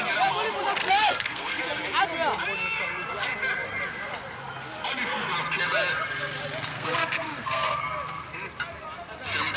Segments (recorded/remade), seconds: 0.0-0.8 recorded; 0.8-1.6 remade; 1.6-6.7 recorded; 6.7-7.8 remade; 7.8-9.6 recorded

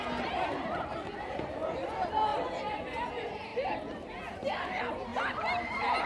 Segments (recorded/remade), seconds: 0.0-6.1 recorded

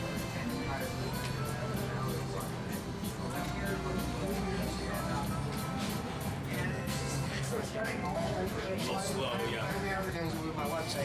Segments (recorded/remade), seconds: 0.0-6.7 recorded; 6.7-8.9 remade; 8.9-9.7 recorded; 9.7-10.3 remade; 10.3-11.0 recorded